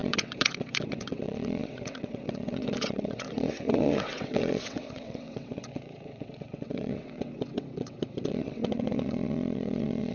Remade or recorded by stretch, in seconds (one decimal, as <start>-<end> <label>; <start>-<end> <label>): 0.0-10.1 remade